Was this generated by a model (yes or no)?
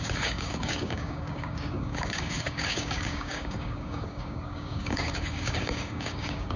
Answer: yes